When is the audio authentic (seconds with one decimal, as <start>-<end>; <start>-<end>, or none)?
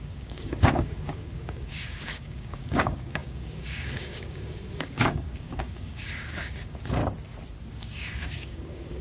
7.0-7.7